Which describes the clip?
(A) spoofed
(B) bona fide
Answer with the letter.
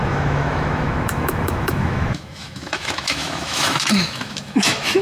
A